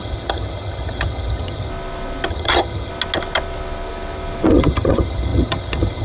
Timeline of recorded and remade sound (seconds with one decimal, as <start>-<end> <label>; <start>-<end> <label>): 0.0-1.7 remade; 1.7-2.3 recorded; 2.3-2.9 remade; 2.9-4.5 recorded; 4.5-6.0 remade